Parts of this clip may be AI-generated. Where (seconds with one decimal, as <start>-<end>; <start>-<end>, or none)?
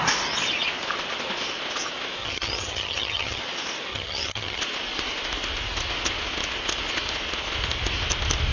2.2-3.4; 3.9-4.6